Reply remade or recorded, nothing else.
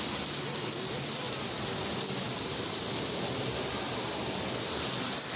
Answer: recorded